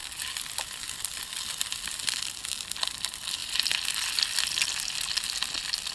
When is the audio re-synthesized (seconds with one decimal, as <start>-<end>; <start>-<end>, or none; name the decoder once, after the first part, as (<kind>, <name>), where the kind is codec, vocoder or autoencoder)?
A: none